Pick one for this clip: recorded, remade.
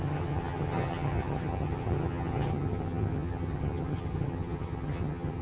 remade